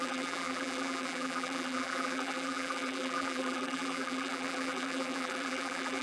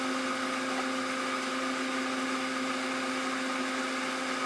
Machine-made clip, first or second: first